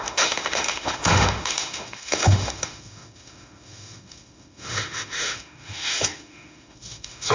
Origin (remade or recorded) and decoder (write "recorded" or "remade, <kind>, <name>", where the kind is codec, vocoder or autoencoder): remade, autoencoder, DAC-VAE